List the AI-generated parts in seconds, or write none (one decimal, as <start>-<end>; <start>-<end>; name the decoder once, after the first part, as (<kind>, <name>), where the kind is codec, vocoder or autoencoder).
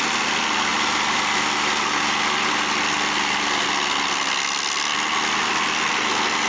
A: none